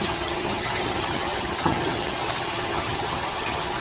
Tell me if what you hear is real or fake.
fake